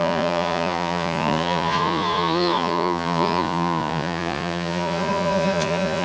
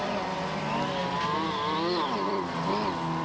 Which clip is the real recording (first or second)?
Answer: second